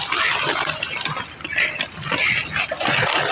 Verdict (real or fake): real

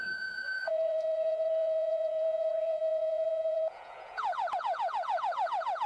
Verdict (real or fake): fake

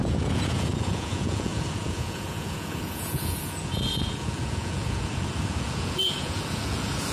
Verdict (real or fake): fake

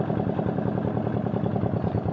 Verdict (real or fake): real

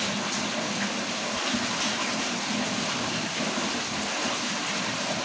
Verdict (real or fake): real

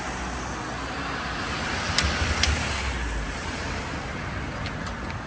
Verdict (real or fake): real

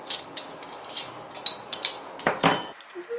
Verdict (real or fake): real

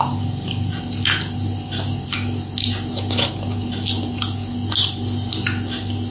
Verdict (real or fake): real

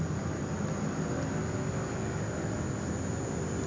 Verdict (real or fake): real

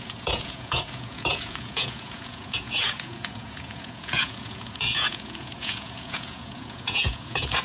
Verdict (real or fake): fake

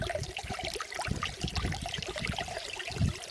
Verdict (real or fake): real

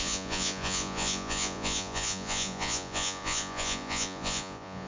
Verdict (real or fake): fake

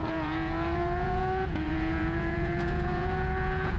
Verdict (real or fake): fake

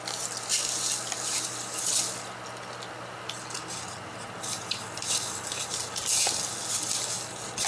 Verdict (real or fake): real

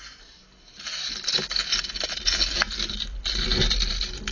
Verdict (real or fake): real